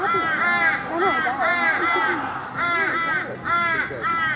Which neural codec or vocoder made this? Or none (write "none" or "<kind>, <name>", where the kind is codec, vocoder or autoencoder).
none